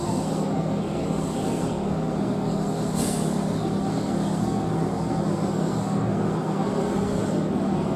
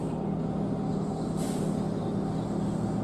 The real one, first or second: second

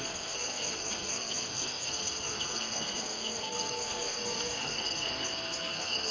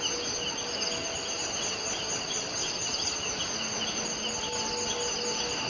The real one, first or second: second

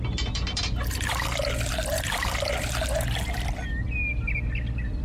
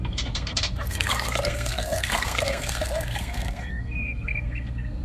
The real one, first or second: first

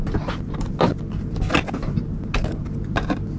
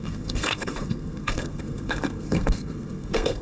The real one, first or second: first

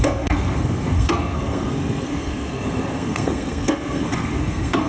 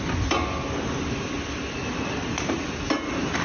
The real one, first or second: second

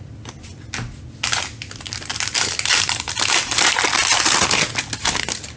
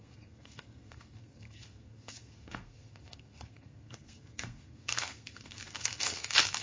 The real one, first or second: first